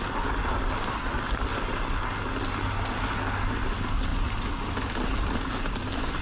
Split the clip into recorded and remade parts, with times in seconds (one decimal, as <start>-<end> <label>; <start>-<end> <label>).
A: 0.0-6.2 recorded